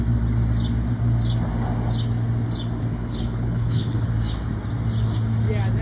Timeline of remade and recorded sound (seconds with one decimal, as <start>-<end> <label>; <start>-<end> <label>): 0.0-2.9 recorded; 2.9-4.1 remade; 4.1-5.8 recorded